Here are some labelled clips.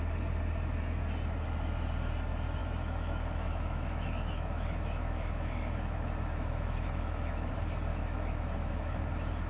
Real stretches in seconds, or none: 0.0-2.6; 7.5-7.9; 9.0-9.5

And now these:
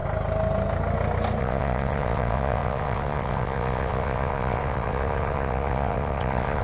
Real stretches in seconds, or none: 0.0-1.4

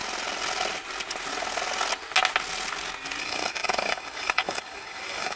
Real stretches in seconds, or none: 0.0-3.2

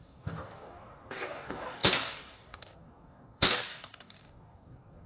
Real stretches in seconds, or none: none